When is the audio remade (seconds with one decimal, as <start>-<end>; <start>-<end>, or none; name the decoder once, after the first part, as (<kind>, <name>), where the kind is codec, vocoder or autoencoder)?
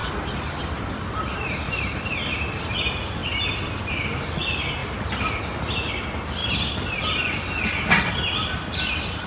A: 3.2-3.9 (vocoder, BigVGAN v2); 4.8-5.3; 6.4-7.0